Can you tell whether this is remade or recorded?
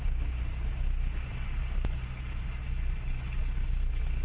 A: recorded